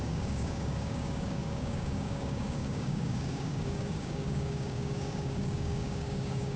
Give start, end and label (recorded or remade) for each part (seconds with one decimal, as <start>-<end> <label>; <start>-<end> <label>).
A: 0.0-6.6 remade